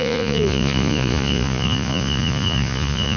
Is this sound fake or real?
fake